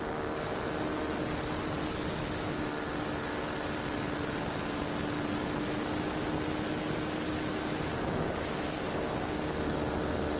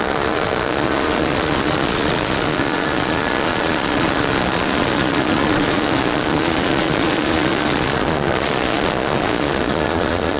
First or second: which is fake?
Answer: second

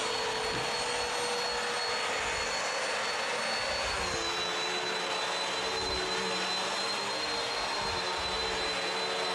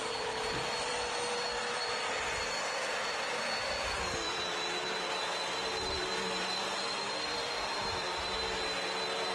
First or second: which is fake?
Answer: second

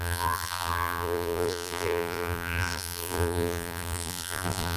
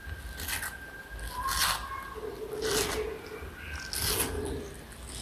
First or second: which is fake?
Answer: first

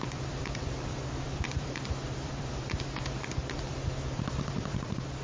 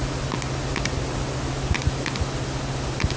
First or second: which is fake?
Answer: first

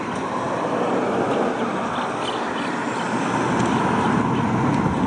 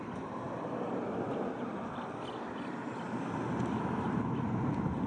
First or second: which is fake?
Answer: second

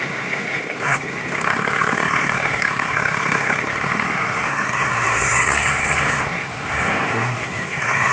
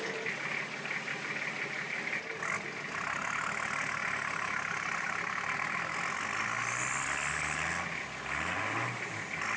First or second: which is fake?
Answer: first